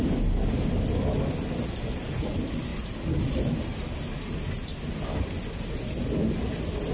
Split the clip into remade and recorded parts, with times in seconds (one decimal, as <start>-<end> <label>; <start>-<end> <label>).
0.0-6.9 recorded